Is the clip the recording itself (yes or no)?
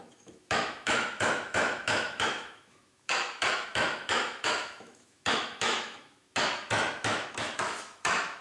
no